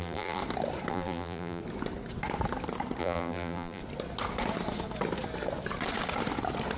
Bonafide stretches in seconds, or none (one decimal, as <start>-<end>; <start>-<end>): 0.4-0.9; 1.6-3.0; 3.8-6.8